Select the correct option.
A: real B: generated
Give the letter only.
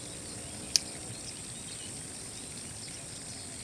A